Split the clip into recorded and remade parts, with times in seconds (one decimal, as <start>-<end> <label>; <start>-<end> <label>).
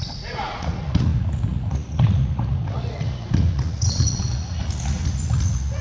0.0-5.8 remade